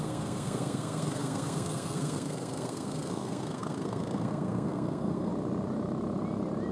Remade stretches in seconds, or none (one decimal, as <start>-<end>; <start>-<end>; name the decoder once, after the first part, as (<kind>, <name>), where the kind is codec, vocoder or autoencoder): 0.0-5.3 (codec, SNAC)